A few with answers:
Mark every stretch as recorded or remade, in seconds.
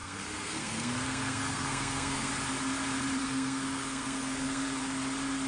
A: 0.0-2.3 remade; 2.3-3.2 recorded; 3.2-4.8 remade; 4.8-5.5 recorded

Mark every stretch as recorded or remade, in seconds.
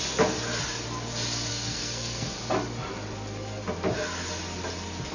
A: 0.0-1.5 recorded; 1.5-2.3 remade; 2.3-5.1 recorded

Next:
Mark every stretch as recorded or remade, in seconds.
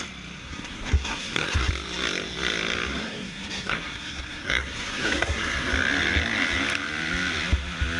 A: 0.0-0.4 recorded; 0.4-1.7 remade; 1.7-2.9 recorded; 2.9-5.7 remade; 5.7-8.0 recorded